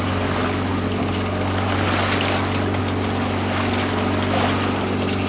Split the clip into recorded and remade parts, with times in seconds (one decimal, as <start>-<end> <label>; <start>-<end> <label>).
0.0-5.3 recorded